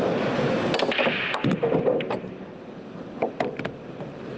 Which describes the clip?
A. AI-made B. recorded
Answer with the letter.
B